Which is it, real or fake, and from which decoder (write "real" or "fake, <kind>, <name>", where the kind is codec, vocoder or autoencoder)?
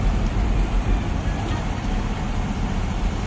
fake, vocoder, BigVGAN v2